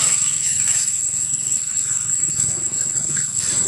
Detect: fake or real fake